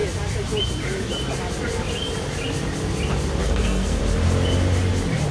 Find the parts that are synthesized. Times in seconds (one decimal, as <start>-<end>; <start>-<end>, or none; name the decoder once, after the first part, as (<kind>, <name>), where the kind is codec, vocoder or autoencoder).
3.4-4.0 (codec, SNAC)

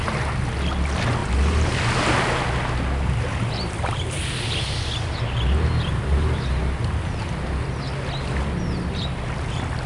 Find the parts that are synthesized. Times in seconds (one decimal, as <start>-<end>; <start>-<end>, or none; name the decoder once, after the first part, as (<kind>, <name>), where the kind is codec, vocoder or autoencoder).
none

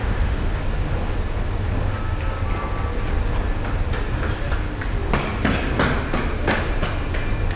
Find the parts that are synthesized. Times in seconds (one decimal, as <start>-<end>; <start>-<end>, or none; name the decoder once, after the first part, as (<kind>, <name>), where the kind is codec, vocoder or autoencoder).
0.0-0.6 (autoencoder, DAC-VAE)

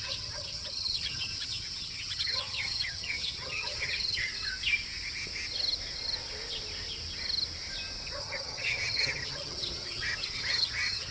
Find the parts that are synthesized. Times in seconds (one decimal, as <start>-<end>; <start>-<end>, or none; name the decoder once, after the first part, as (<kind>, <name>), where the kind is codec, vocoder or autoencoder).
0.0-4.3 (vocoder, HiFi-GAN); 8.2-11.1

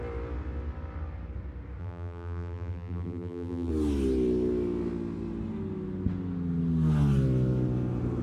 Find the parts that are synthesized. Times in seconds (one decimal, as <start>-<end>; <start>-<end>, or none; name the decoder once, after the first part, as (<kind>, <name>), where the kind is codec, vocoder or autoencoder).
1.8-3.7 (vocoder, BigVGAN v2)

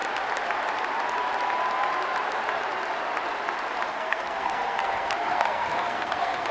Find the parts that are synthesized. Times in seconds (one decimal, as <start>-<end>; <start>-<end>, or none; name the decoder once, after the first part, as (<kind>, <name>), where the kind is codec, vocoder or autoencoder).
3.9-6.5 (codec, SNAC)

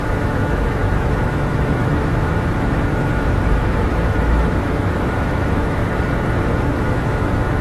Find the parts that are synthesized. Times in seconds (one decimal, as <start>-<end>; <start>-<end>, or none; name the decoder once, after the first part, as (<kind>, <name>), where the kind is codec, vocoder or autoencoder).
0.0-5.8 (autoencoder, DAC-VAE); 6.5-7.6